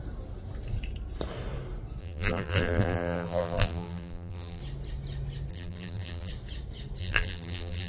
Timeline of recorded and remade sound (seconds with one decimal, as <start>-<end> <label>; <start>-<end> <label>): 0.0-2.0 recorded; 2.0-4.6 remade; 4.6-5.5 recorded; 5.5-6.3 remade; 6.3-7.0 recorded; 7.0-7.9 remade